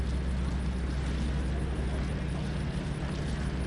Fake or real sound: real